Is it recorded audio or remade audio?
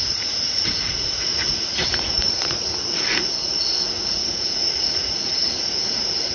remade